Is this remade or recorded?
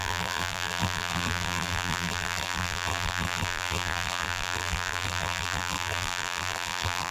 remade